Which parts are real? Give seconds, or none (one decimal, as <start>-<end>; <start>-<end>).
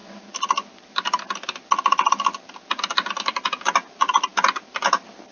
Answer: 0.0-5.3